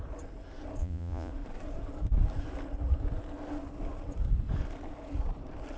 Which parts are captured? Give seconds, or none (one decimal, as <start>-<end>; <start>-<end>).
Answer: 0.0-0.8; 1.3-5.8